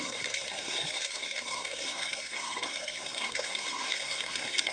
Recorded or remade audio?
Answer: remade